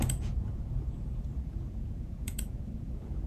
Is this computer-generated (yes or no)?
yes